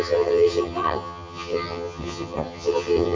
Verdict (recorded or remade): remade